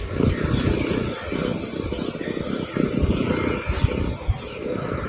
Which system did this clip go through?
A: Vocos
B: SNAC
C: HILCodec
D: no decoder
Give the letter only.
D